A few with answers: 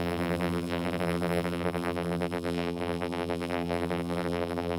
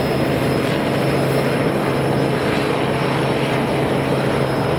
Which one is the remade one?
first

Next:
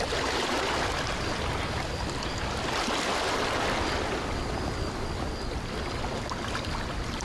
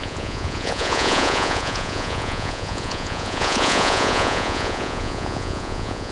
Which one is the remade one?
second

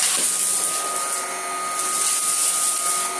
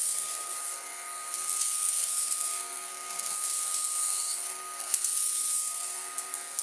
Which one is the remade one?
second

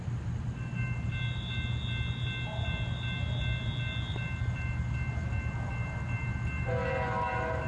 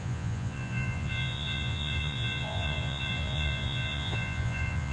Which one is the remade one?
second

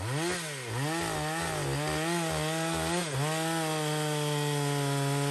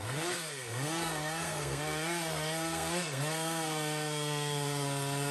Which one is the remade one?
second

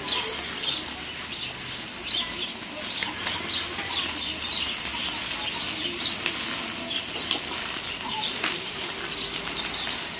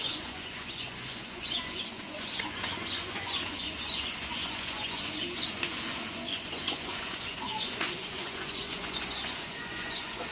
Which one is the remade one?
second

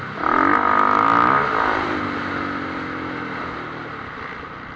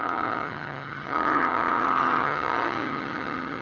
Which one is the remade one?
second